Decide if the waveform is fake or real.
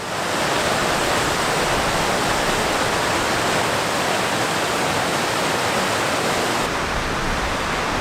real